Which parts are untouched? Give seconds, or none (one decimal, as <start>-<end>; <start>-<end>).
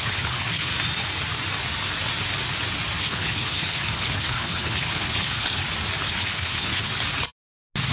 0.7-3.0; 5.6-6.1; 6.9-7.9